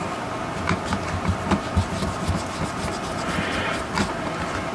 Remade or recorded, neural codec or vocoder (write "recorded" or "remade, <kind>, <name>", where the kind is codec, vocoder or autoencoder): recorded